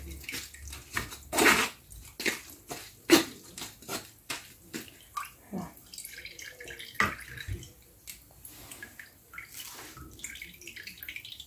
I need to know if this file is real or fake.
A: real